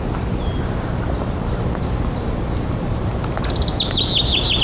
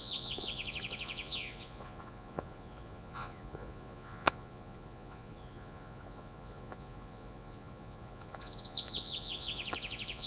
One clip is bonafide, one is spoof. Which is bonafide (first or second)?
first